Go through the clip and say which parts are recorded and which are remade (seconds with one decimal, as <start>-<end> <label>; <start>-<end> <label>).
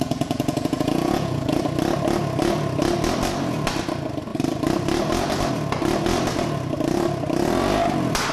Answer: 0.0-1.6 remade; 1.6-8.3 recorded